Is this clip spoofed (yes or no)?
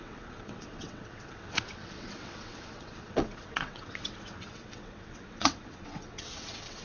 yes